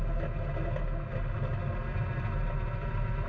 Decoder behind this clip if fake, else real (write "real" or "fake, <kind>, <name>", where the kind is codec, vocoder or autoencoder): real